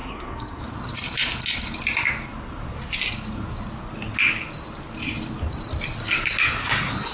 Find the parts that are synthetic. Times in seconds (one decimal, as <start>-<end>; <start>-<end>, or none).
0.0-0.6